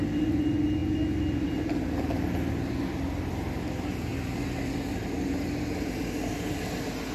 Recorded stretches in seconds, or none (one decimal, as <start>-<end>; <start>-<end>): 0.0-7.1